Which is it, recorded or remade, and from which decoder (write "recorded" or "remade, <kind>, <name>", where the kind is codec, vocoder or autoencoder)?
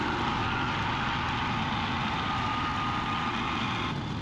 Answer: recorded